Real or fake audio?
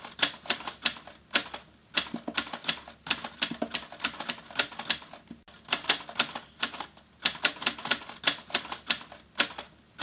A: real